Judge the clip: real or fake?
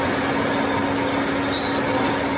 real